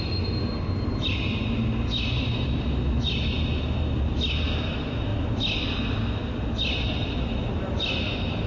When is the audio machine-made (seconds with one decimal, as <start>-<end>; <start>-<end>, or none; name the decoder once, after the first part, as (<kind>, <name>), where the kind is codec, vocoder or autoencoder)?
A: none